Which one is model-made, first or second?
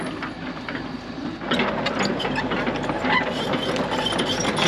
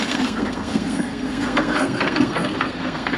second